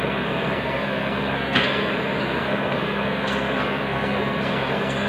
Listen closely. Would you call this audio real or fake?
fake